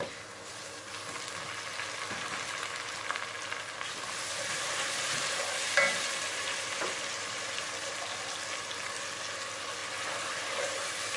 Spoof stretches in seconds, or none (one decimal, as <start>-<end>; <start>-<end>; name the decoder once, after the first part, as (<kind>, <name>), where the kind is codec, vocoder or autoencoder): 6.2-7.9 (vocoder, BigVGAN v2); 9.8-11.2